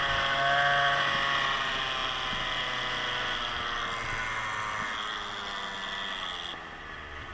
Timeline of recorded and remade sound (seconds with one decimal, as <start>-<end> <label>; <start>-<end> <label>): 0.0-7.3 recorded